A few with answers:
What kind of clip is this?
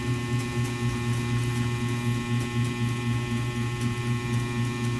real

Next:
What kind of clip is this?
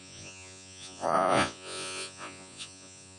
fake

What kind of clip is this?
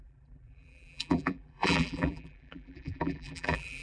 fake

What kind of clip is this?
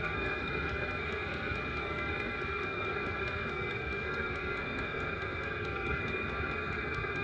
fake